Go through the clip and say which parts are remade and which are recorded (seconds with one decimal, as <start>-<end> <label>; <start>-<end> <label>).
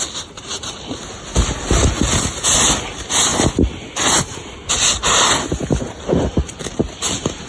0.0-7.5 recorded